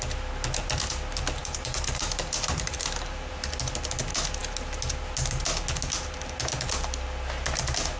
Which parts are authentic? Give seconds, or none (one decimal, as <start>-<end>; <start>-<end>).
0.0-1.4; 3.3-8.0